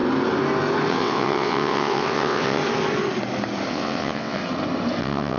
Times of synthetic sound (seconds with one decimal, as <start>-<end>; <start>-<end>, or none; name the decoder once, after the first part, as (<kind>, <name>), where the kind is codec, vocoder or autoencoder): 0.9-2.6 (vocoder, WaveNeXt); 3.7-4.4; 5.0-5.4